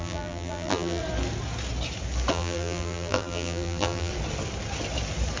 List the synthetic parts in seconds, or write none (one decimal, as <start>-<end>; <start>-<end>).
0.0-1.0; 2.3-4.1